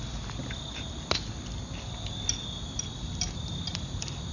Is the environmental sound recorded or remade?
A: recorded